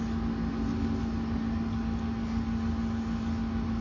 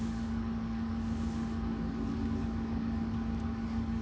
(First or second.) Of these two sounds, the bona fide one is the first